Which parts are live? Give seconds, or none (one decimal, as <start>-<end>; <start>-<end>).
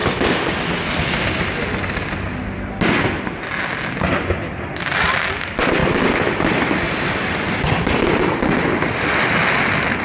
0.0-5.8; 9.0-10.0